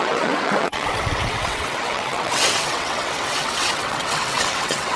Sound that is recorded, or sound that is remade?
remade